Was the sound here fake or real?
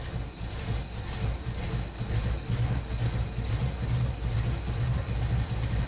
real